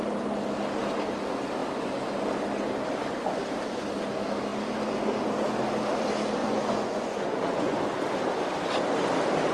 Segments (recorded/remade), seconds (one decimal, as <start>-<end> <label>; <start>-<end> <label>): 0.0-6.4 recorded; 6.4-8.0 remade; 8.0-9.5 recorded